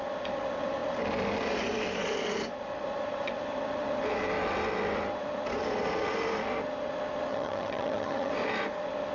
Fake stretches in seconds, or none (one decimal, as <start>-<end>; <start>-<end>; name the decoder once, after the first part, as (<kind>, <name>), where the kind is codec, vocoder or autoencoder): 7.3-8.3 (vocoder, HiFi-GAN)